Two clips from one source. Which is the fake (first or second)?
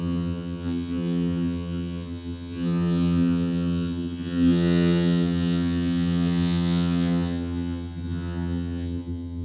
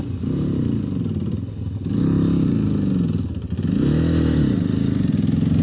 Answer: first